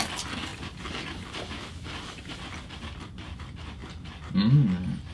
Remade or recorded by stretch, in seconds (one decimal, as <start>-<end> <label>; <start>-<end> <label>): 0.0-5.1 recorded